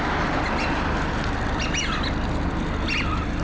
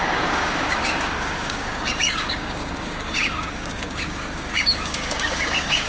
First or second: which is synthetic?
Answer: second